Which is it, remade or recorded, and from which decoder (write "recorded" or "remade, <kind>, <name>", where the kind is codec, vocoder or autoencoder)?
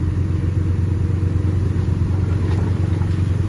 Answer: recorded